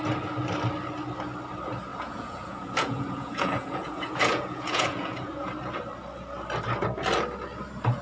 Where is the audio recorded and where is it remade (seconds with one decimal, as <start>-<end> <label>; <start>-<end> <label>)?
0.0-1.9 recorded; 1.9-5.5 remade; 5.5-8.0 recorded

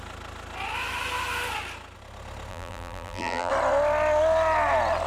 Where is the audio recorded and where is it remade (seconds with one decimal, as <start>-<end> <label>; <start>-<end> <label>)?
0.0-2.5 recorded; 2.5-3.5 remade; 3.5-5.1 recorded

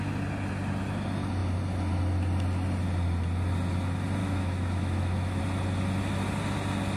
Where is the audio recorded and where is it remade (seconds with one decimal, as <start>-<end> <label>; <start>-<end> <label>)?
0.0-4.2 recorded; 4.2-5.4 remade; 5.4-7.0 recorded

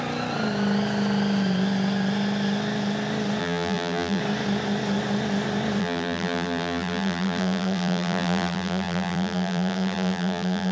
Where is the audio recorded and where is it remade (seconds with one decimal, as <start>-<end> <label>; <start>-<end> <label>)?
0.0-3.4 recorded; 3.4-4.2 remade; 4.2-5.8 recorded; 5.8-10.7 remade